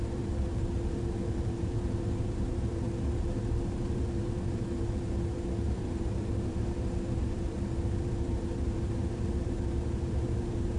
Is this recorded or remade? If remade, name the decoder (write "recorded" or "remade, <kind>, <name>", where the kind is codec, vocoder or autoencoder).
remade, vocoder, BigVGAN v2